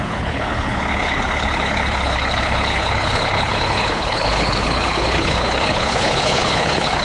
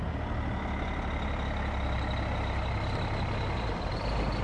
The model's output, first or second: first